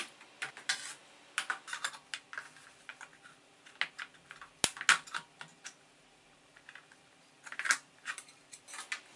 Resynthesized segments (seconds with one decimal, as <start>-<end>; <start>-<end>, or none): 5.5-8.4